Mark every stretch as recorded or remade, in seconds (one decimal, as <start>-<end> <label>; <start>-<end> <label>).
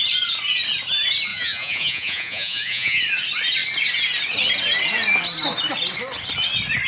0.0-1.3 recorded; 1.3-3.0 remade; 3.0-6.9 recorded